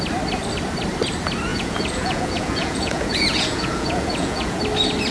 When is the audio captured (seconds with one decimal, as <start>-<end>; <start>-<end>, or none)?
0.0-1.5; 4.6-5.1

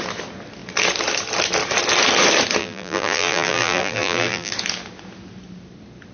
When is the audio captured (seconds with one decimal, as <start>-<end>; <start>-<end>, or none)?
0.0-2.6; 4.5-6.1

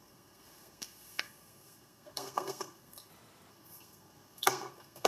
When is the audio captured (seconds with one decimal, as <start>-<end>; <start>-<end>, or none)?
3.1-3.5